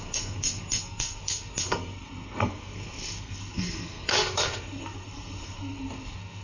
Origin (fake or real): fake